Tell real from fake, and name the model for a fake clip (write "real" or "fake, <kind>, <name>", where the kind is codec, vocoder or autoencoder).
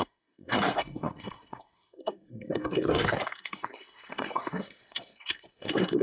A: fake, codec, SNAC